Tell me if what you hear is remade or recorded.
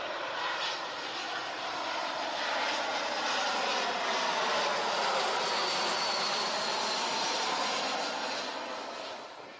recorded